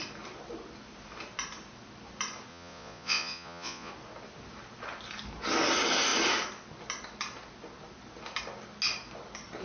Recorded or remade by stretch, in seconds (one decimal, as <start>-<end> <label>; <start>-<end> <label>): 0.0-2.5 recorded; 2.5-3.9 remade; 3.9-9.6 recorded